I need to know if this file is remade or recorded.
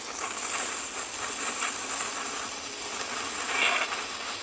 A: recorded